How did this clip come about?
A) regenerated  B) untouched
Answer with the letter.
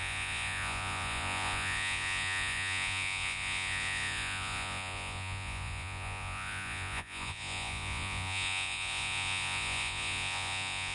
A